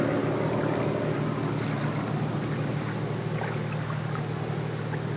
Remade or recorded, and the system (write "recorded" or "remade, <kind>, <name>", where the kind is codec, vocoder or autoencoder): recorded